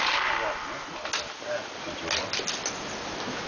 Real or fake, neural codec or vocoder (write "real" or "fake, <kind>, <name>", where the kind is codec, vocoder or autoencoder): real